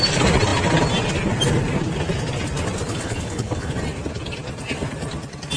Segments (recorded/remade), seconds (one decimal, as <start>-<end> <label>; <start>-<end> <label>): 0.0-2.9 recorded; 2.9-3.7 remade; 3.7-5.6 recorded